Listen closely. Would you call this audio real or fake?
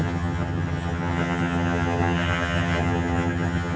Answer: fake